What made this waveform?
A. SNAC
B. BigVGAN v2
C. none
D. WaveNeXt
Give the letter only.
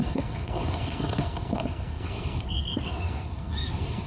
A